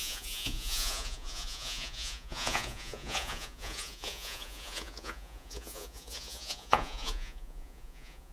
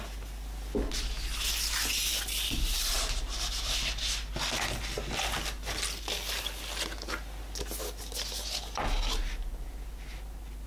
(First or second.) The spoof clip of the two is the first